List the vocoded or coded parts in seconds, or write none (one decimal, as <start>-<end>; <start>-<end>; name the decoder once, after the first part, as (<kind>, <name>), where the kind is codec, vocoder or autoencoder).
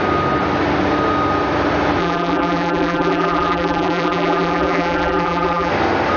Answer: 2.0-5.7 (vocoder, BigVGAN v2)